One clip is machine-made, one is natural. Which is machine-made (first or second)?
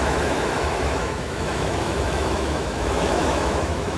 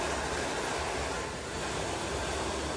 first